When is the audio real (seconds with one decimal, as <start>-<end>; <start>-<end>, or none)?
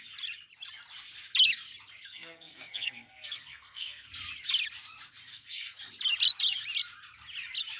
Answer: 0.0-2.0; 4.1-5.3; 5.8-7.8